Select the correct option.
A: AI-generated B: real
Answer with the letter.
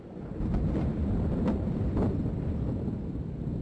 B